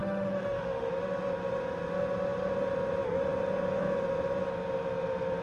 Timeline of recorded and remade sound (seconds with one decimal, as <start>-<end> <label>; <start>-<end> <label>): 0.0-0.9 remade; 0.9-5.4 recorded